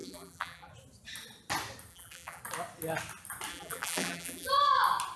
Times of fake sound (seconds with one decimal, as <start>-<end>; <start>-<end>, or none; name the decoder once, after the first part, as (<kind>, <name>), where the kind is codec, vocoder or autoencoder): 0.0-0.7 (vocoder, BigVGAN v2); 1.9-2.4; 3.5-4.5

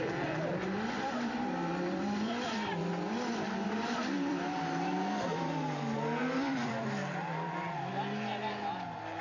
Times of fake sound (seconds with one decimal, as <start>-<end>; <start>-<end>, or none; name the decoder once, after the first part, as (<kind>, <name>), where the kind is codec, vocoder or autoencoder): 0.5-5.5 (vocoder, BigVGAN v2); 6.2-7.9

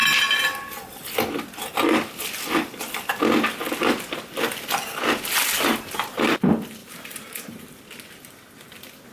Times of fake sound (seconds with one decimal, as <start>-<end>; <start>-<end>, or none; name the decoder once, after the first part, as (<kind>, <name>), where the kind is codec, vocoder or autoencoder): 6.8-7.8 (vocoder, BigVGAN v2)

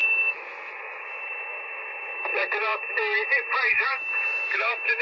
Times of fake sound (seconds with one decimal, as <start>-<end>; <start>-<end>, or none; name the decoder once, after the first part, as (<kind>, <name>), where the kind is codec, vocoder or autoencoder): 0.0-2.3 (autoencoder, DAC-VAE); 3.7-5.0

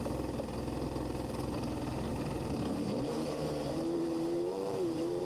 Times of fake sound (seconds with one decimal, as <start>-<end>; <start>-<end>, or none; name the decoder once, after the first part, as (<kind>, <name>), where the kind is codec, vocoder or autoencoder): 2.1-5.2 (vocoder, BigVGAN v2)

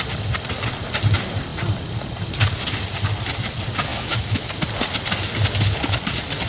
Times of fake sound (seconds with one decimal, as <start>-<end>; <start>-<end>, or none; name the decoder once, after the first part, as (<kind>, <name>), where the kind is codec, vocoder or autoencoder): 3.9-4.5 (autoencoder, DAC-VAE)

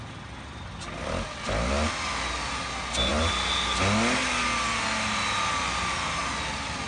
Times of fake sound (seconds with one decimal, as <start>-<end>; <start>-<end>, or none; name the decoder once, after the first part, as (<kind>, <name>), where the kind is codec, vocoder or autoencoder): none